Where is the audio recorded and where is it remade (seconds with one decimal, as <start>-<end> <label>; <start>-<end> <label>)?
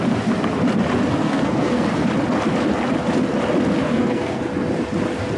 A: 0.0-1.2 recorded; 1.2-1.9 remade; 1.9-3.8 recorded; 3.8-4.4 remade; 4.4-5.4 recorded